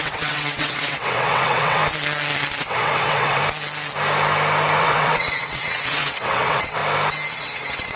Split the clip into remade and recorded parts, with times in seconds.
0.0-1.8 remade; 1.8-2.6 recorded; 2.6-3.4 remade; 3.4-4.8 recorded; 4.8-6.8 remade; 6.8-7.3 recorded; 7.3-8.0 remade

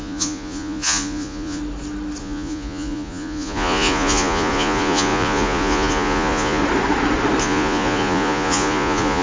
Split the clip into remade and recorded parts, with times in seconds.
0.0-1.6 remade; 1.6-2.2 recorded; 2.2-6.6 remade; 6.6-7.4 recorded; 7.4-9.2 remade

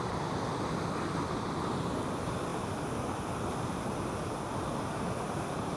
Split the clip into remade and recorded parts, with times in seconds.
0.0-5.8 recorded

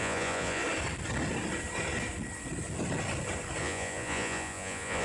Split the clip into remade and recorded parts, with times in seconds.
0.0-0.6 remade; 0.6-3.6 recorded; 3.6-5.0 remade